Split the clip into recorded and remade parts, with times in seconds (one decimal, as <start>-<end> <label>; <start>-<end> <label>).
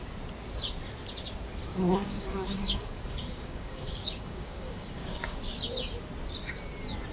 0.0-1.7 recorded; 1.7-5.4 remade; 5.4-7.1 recorded